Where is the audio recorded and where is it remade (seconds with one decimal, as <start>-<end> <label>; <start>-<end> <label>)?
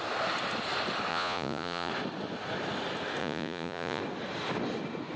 0.0-1.1 recorded; 1.1-1.9 remade; 1.9-3.2 recorded; 3.2-4.0 remade; 4.0-5.2 recorded